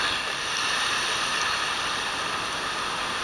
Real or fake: real